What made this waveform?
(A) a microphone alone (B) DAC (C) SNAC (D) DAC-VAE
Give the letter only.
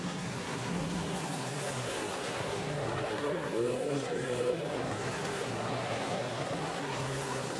C